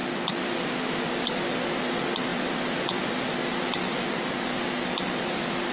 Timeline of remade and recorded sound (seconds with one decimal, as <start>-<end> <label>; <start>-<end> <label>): 0.0-1.1 remade; 1.1-5.7 recorded